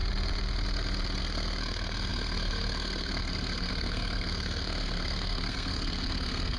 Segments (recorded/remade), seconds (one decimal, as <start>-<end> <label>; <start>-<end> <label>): 0.0-1.2 recorded; 1.2-6.6 remade

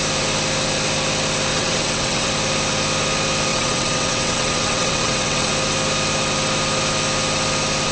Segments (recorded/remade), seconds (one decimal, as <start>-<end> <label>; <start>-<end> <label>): 0.0-1.5 recorded; 1.5-2.3 remade; 2.3-3.5 recorded; 3.5-5.5 remade; 5.5-7.9 recorded

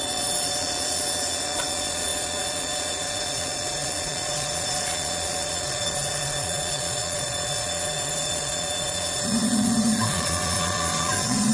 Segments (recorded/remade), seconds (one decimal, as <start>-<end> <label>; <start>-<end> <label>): 0.0-11.5 remade

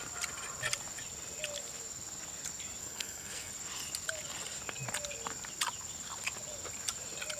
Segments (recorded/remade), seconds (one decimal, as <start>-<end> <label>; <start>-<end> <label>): 0.0-2.8 recorded; 2.8-3.5 remade; 3.5-7.4 recorded